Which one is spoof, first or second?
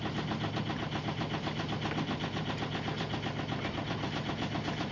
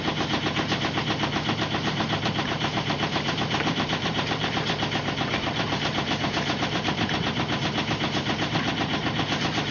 second